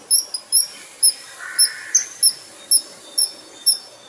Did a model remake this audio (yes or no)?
no